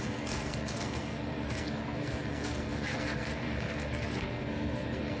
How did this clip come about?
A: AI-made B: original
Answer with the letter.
A